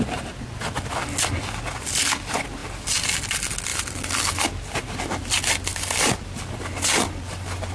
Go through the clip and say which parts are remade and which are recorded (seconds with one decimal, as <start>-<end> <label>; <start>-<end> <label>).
0.0-3.7 recorded; 3.7-4.4 remade; 4.4-5.7 recorded; 5.7-7.7 remade